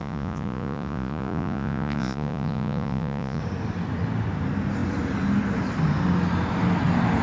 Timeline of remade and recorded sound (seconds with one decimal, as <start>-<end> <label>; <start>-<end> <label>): 0.0-3.4 remade; 3.4-7.2 recorded